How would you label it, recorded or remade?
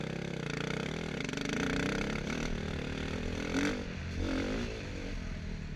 recorded